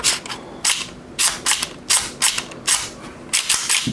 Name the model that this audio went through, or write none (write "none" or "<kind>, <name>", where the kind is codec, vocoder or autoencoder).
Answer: none